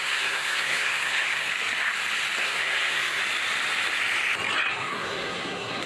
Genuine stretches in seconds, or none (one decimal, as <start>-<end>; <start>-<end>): 1.5-2.4; 3.2-4.7

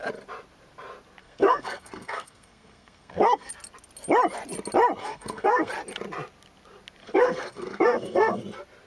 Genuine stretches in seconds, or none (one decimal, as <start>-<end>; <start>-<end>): 0.0-1.2; 3.5-5.0; 5.7-7.0; 8.4-8.9

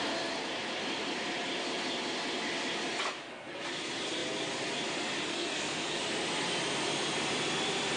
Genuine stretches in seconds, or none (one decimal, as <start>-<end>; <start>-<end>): 0.0-5.3; 6.0-8.0